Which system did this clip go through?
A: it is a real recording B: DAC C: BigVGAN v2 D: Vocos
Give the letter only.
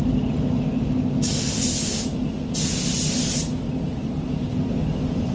A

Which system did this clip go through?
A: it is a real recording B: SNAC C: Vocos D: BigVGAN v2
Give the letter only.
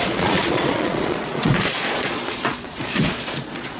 C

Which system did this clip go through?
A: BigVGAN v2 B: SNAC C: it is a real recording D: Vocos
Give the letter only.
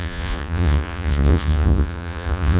D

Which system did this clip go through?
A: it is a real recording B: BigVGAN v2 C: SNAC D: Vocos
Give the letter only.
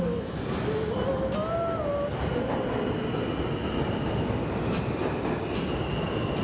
A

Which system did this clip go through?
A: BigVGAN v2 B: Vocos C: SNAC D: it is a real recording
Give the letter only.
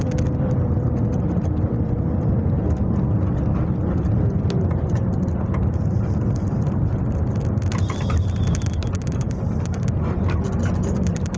D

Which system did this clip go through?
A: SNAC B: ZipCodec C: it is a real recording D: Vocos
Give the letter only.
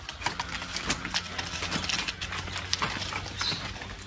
C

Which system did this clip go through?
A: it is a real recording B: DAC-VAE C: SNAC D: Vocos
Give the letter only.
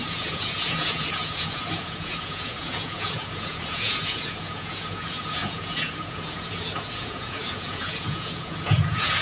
D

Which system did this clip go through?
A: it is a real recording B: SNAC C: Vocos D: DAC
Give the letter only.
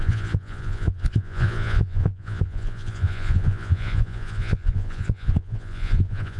C